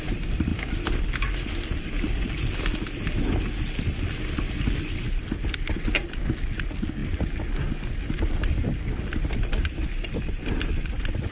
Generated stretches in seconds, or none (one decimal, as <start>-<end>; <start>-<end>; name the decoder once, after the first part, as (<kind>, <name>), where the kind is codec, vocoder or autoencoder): none